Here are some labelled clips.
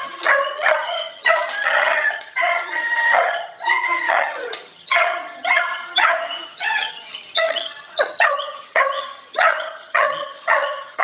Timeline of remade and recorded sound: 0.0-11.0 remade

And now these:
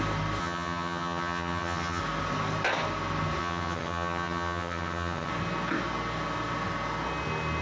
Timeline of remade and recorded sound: 0.0-0.4 recorded; 0.4-2.0 remade; 2.0-3.4 recorded; 3.4-5.3 remade; 5.3-7.6 recorded

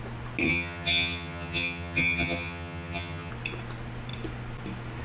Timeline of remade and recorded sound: 0.0-0.4 recorded; 0.4-3.3 remade; 3.3-5.0 recorded

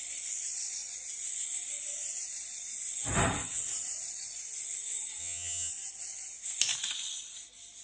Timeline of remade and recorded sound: 0.0-5.2 recorded; 5.2-5.7 remade; 5.7-7.8 recorded

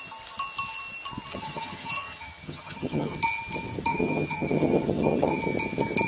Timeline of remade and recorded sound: 0.0-1.3 recorded; 1.3-3.2 remade; 3.2-3.9 recorded; 3.9-5.4 remade; 5.4-6.1 recorded

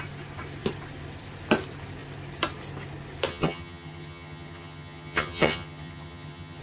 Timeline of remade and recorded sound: 0.0-3.3 recorded; 3.3-6.6 remade